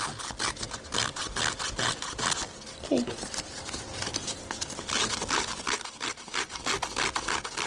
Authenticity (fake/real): real